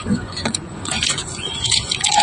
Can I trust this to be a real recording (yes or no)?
no